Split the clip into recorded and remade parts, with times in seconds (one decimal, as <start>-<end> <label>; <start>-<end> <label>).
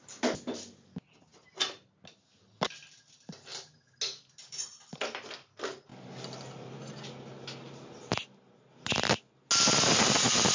0.0-10.5 recorded